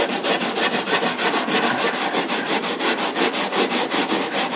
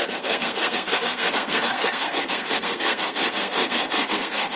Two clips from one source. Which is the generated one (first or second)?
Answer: second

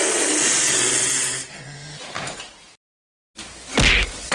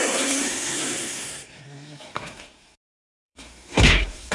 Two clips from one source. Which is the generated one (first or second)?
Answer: second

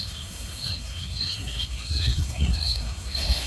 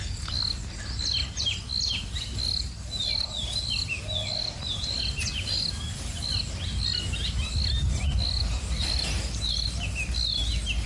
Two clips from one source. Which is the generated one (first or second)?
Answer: first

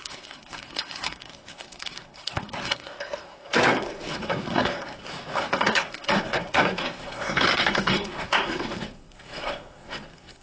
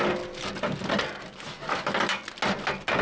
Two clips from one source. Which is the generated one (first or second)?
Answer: first